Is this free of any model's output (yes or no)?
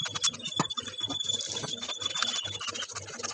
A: yes